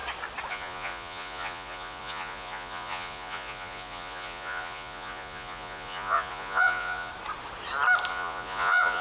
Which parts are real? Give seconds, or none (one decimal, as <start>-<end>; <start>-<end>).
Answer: 0.0-0.5; 7.1-8.1